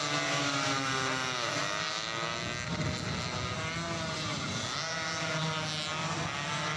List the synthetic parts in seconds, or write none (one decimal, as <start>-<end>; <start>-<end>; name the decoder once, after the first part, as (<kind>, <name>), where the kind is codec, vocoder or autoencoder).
none